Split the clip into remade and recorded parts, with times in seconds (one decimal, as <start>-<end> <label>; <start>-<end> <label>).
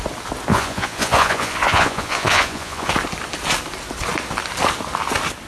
0.0-0.5 recorded; 0.5-2.9 remade; 2.9-5.5 recorded